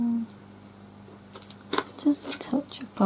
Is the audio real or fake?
real